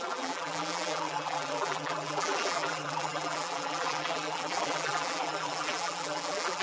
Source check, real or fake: fake